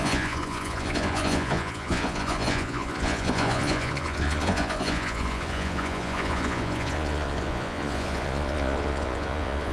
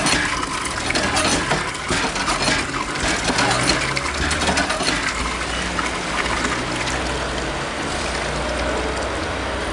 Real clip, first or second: second